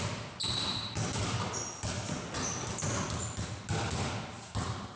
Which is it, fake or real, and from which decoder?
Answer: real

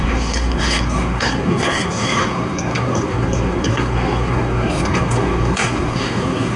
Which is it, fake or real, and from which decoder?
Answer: fake, codec, SNAC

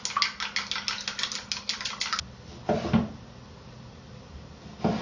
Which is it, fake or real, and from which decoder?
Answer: real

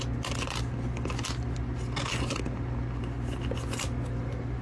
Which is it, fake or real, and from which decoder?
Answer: real